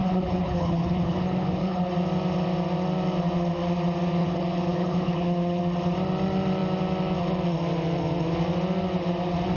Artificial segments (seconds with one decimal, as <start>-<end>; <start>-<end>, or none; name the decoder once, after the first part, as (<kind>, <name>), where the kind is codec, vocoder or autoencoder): 0.0-1.9 (codec, HILCodec); 4.2-5.6